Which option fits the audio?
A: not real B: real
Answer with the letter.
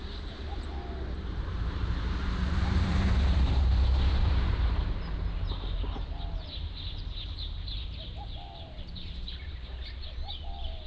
A